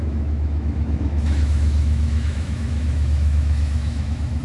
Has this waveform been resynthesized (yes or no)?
yes